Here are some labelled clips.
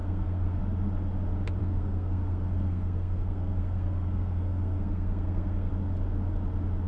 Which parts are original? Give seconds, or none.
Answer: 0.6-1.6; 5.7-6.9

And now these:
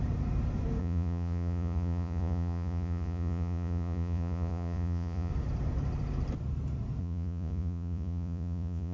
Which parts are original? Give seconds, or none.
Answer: 0.0-0.8; 5.3-7.0

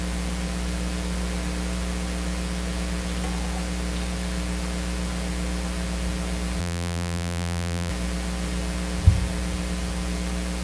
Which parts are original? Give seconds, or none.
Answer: 0.0-6.6; 7.9-10.6

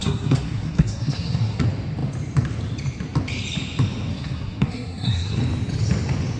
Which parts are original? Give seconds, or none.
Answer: 1.6-4.1; 5.4-6.4

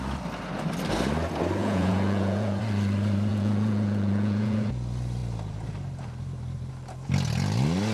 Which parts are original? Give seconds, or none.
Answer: 0.0-1.6; 2.6-3.3; 4.7-7.9

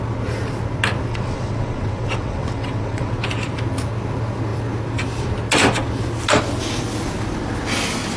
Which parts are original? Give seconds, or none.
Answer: 0.0-1.1; 3.2-8.2

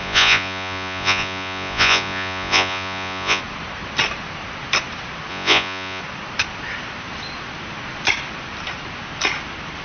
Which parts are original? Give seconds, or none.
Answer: 3.4-5.3; 6.0-9.8